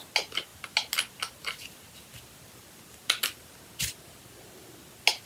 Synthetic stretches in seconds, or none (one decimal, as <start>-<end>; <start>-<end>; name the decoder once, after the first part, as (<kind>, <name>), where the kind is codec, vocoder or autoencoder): none